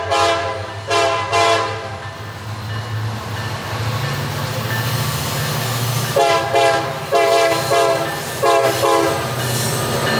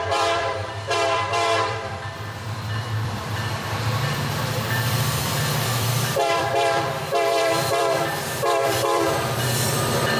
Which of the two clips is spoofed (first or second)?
second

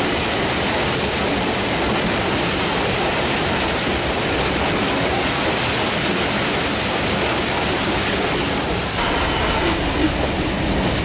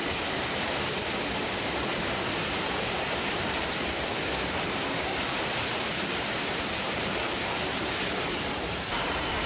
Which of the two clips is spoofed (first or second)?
second